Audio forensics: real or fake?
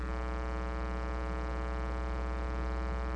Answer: real